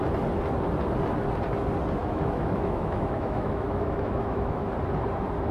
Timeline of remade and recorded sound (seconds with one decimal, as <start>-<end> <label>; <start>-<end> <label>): 0.0-2.0 recorded; 2.0-4.7 remade; 4.7-5.5 recorded